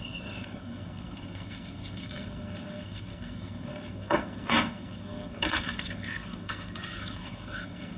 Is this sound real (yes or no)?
no